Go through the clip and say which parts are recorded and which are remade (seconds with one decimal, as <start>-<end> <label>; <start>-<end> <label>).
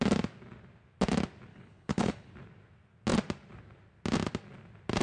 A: 0.0-1.5 recorded; 1.5-2.3 remade; 2.3-5.0 recorded